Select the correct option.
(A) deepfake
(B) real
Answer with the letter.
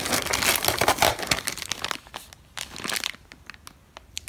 B